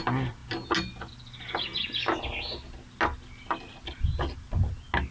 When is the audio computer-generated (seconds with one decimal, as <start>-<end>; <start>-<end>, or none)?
none